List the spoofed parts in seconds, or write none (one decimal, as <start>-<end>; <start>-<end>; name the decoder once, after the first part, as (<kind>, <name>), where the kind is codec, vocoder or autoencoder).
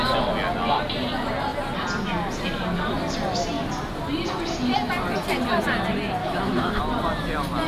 6.2-6.8 (autoencoder, DAC-VAE)